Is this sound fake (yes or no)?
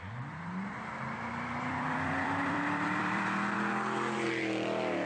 yes